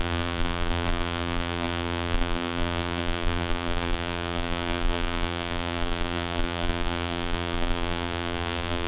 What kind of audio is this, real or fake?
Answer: fake